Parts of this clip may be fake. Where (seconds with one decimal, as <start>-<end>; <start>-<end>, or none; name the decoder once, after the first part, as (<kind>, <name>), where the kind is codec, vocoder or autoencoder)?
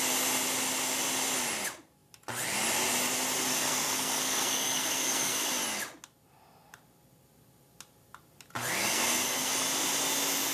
3.5-5.5 (codec, SNAC); 8.8-9.5